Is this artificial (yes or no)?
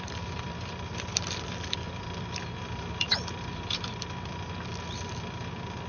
yes